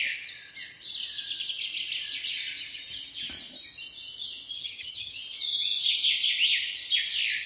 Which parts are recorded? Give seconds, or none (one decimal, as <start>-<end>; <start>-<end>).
0.0-4.5; 5.2-7.5